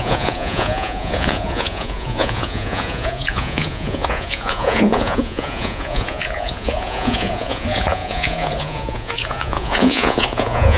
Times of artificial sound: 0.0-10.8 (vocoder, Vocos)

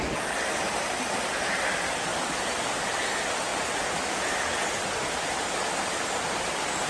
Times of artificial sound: none

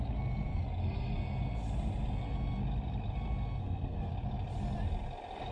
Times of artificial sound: 3.6-4.1 (codec, SNAC)

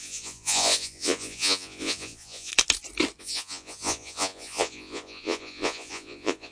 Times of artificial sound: 0.0-2.5 (vocoder, Vocos); 3.2-6.5